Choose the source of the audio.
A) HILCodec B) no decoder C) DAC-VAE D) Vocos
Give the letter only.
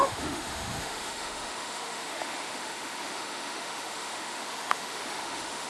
C